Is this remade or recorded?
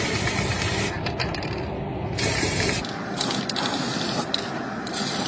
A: recorded